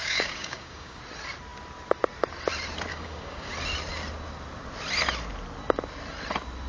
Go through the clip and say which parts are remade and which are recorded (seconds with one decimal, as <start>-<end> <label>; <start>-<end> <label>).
0.0-1.0 remade; 1.0-2.9 recorded; 2.9-3.5 remade; 3.5-6.7 recorded